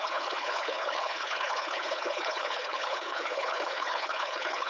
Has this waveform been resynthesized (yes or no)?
yes